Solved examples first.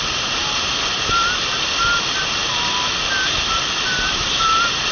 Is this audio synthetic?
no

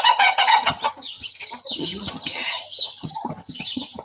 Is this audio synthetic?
yes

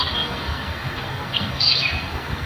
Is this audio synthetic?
yes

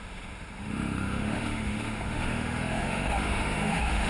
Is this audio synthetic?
yes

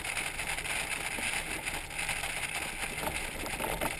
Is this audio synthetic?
no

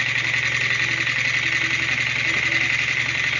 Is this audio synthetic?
no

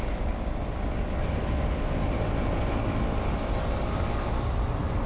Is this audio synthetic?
no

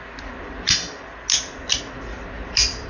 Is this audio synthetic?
no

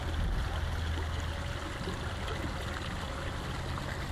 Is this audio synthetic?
no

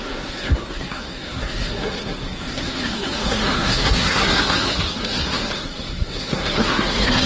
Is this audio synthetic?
yes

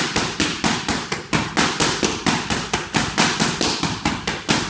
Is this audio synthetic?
no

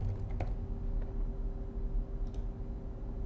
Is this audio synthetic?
no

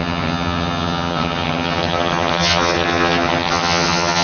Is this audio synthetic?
yes